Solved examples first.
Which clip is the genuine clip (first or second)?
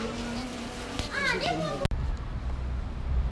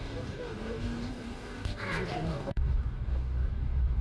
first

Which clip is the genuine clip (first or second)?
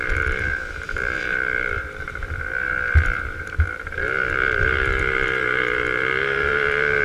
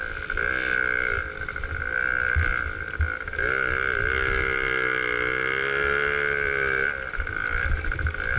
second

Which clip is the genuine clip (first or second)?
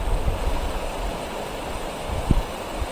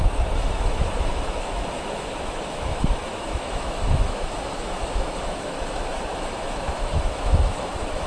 first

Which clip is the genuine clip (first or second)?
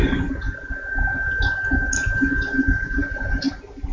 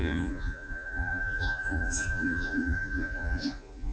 first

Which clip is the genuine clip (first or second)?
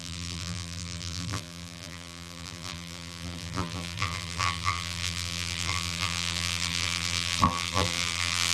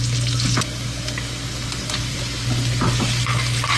second